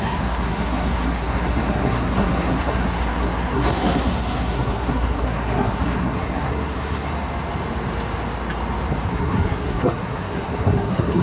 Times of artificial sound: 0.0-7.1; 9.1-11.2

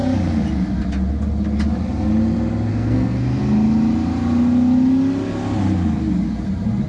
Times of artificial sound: 2.7-3.4

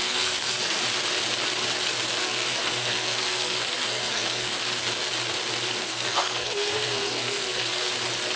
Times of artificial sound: 0.0-0.8; 2.2-4.6; 5.8-7.9

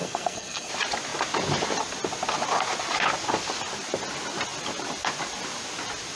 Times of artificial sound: 0.0-0.7